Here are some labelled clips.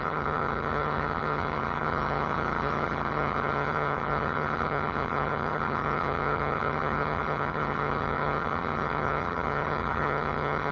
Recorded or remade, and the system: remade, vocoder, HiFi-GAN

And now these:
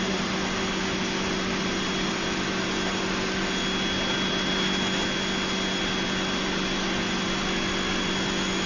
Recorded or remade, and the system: recorded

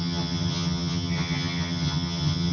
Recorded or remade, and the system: remade, vocoder, HiFi-GAN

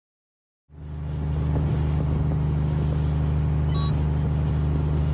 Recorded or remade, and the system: recorded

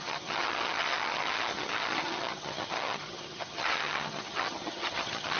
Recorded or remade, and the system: remade, vocoder, HiFi-GAN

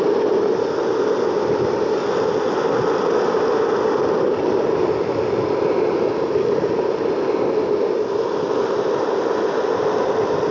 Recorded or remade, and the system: recorded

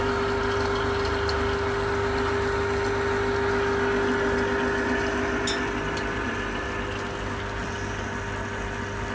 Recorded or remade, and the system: recorded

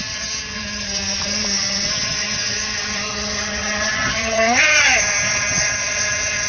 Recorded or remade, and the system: remade, vocoder, HiFi-GAN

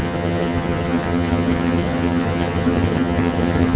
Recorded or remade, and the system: remade, vocoder, HiFi-GAN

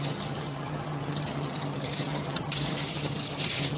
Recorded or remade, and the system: remade, vocoder, HiFi-GAN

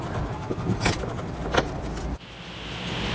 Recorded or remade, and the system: recorded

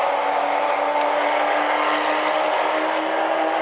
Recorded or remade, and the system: recorded